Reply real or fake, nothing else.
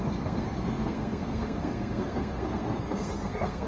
fake